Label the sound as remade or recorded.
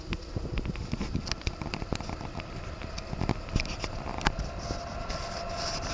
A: recorded